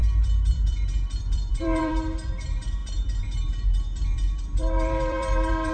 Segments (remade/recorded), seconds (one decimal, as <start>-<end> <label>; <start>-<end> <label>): 0.0-5.7 remade